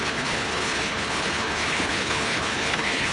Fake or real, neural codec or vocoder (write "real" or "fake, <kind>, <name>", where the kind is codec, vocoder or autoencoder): fake, codec, HILCodec